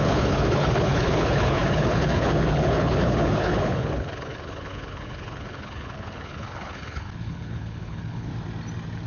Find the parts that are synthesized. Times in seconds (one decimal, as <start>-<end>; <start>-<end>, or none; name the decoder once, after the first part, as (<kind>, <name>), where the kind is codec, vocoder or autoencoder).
0.0-8.3 (codec, HILCodec)